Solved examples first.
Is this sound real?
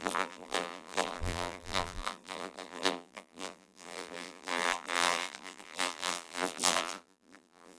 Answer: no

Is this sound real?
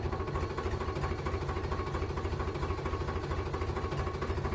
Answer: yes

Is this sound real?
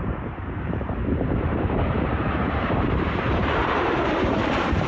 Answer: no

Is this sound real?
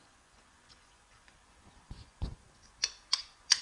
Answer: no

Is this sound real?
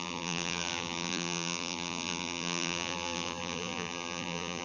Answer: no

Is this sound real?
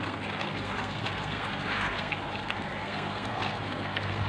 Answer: no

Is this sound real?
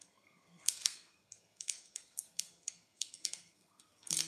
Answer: no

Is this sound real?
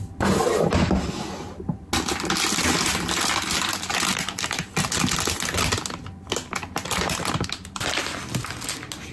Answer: yes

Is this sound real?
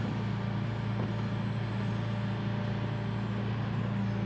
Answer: yes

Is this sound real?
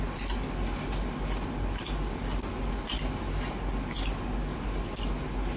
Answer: yes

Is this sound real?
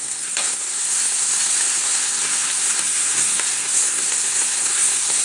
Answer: no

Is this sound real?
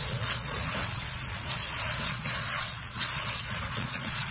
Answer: no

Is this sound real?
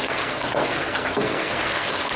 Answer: no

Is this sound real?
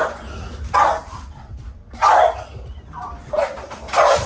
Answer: no